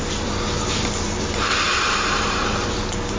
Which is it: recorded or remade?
recorded